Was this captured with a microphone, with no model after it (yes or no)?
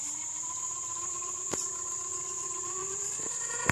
no